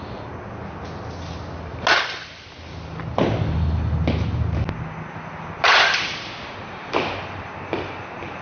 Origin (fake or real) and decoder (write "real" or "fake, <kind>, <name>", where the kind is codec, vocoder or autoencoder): real